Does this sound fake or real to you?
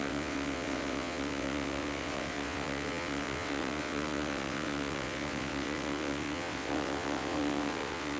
fake